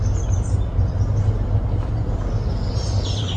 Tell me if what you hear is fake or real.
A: real